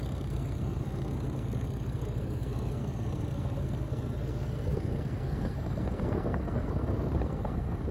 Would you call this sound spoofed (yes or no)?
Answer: yes